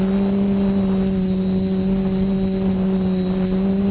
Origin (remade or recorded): recorded